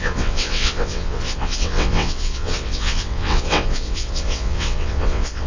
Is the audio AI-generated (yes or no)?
yes